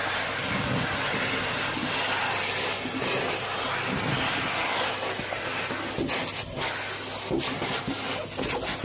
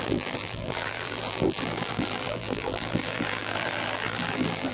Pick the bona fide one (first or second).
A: first